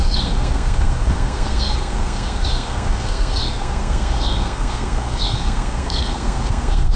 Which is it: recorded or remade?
remade